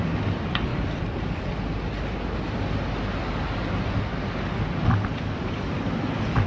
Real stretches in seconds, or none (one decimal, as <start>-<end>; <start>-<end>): 0.0-0.7; 1.5-6.5